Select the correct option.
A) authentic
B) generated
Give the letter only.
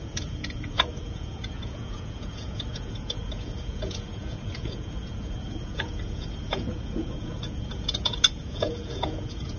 B